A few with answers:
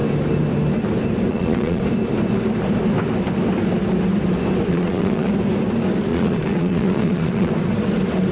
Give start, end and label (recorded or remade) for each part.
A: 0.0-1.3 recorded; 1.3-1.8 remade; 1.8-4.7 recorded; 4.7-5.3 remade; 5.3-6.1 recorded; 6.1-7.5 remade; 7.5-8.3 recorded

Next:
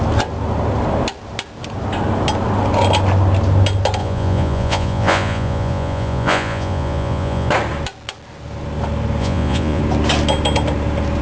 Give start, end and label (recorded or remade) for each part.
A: 0.0-4.0 recorded; 4.0-7.5 remade; 7.5-9.2 recorded; 9.2-9.8 remade; 9.8-11.2 recorded

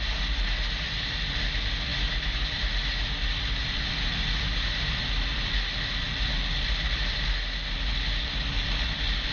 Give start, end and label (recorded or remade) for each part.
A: 0.0-9.3 recorded

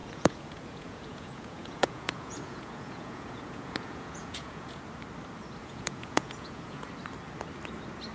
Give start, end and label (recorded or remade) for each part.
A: 0.0-4.8 remade; 4.8-5.6 recorded; 5.6-6.9 remade; 6.9-8.1 recorded

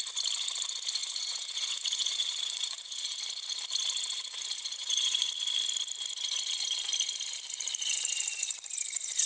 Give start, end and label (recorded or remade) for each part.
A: 0.0-1.0 recorded; 1.0-3.2 remade; 3.2-4.8 recorded; 4.8-5.3 remade; 5.3-9.3 recorded

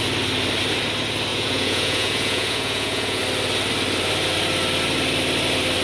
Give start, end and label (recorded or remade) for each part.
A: 0.0-1.3 recorded; 1.3-3.2 remade; 3.2-5.8 recorded

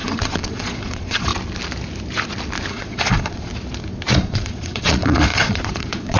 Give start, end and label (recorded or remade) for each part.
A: 0.0-1.3 remade; 1.3-2.7 recorded; 2.7-3.5 remade; 3.5-4.2 recorded; 4.2-6.2 remade